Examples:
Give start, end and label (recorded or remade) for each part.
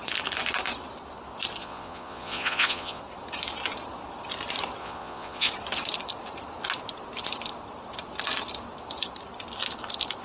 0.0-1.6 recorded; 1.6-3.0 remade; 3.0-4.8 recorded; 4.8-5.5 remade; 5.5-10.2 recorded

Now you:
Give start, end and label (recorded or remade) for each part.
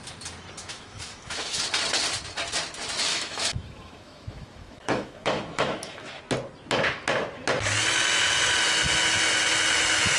0.0-0.6 recorded; 0.6-1.6 remade; 1.6-3.1 recorded; 3.1-6.2 remade; 6.2-10.2 recorded